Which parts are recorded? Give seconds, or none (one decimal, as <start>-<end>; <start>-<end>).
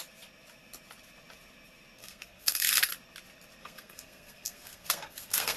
0.0-2.0; 2.9-3.6